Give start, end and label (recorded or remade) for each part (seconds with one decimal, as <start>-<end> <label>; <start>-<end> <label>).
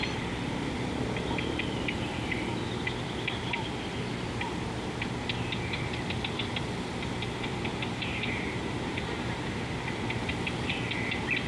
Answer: 0.0-7.7 recorded; 7.7-9.5 remade; 9.5-11.5 recorded